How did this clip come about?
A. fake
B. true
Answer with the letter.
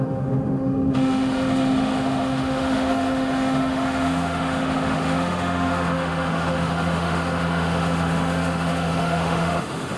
A